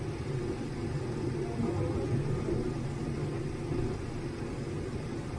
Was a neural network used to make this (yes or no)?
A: no